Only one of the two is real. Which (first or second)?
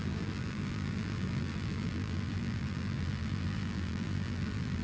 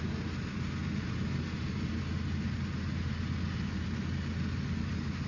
second